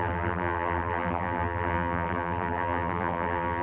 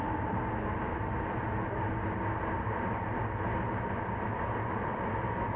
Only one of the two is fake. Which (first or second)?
first